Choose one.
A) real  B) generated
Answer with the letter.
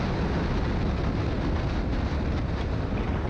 A